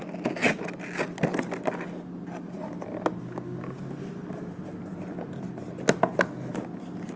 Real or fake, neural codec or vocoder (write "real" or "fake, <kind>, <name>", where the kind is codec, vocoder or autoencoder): real